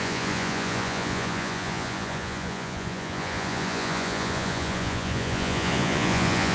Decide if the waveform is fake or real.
fake